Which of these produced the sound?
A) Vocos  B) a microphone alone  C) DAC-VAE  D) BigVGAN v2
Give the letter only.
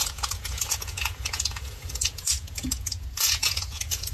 A